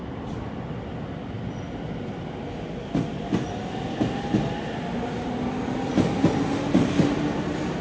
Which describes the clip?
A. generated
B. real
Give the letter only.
B